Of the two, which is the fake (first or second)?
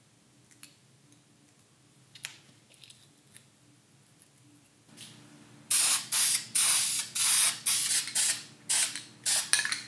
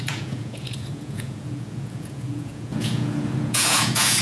second